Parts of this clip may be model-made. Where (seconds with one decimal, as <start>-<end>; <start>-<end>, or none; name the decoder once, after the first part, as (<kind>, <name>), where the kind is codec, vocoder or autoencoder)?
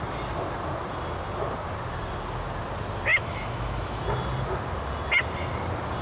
3.1-4.0 (autoencoder, DAC-VAE)